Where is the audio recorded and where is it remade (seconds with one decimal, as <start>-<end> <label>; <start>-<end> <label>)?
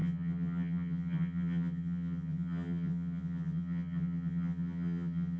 0.0-5.4 remade